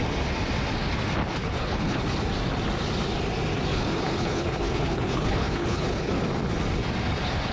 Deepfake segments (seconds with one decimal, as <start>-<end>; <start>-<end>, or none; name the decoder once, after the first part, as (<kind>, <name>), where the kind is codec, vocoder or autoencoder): 1.4-2.0 (codec, HILCodec); 3.7-6.2